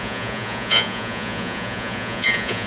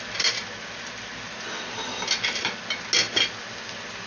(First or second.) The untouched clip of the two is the second